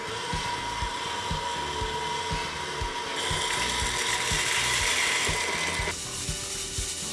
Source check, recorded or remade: recorded